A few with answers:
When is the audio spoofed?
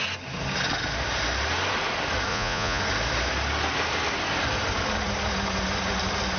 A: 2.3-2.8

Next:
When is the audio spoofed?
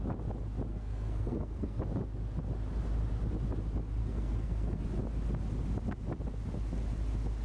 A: 0.7-1.8; 4.0-4.8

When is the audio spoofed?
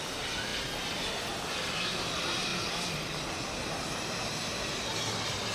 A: none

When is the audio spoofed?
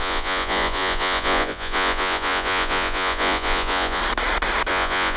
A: 0.0-4.0; 4.7-5.2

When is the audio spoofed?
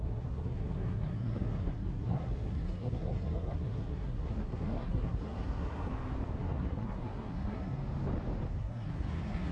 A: 0.0-5.9; 6.4-7.8; 8.6-9.5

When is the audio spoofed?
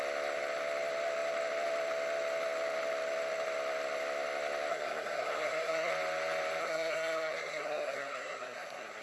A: 4.7-5.9; 6.6-9.0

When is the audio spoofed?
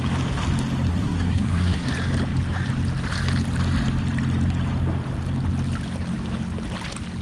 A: 0.9-1.9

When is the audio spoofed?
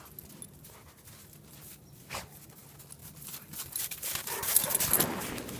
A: 3.0-4.9